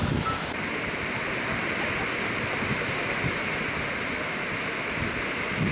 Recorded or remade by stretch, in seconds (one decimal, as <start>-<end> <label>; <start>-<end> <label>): 0.0-5.7 recorded